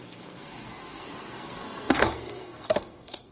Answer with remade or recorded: remade